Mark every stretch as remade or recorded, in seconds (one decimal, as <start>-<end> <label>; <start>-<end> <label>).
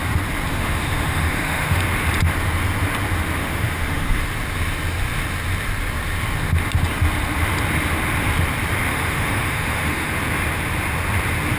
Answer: 0.0-0.5 recorded; 0.5-1.8 remade; 1.8-3.4 recorded; 3.4-4.2 remade; 4.2-8.9 recorded; 8.9-10.1 remade; 10.1-11.6 recorded